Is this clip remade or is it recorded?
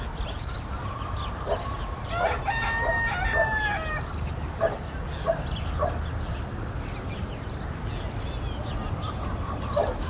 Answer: recorded